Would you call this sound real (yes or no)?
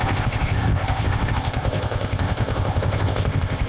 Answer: no